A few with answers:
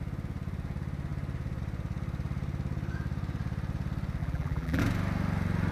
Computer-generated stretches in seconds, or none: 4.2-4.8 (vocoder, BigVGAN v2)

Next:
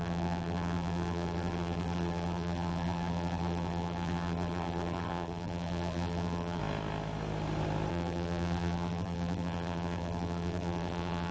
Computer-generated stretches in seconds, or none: 0.0-6.6 (vocoder, BigVGAN v2); 7.9-11.3